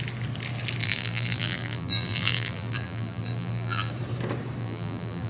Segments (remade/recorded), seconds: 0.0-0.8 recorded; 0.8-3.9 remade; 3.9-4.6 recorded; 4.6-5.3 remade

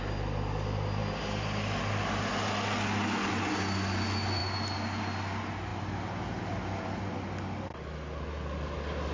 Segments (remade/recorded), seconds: 0.0-9.1 recorded

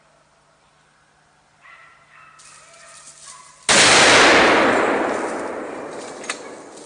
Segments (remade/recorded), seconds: 0.0-6.9 recorded

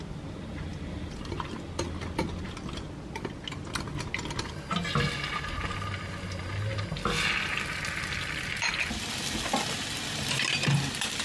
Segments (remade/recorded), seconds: 0.0-11.2 recorded

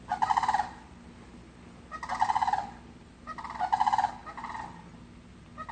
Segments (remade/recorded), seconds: 0.0-5.7 recorded